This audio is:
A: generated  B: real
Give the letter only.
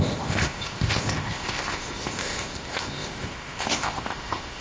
A